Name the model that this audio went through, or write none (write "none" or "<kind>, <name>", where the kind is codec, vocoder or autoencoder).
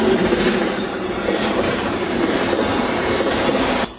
vocoder, BigVGAN v2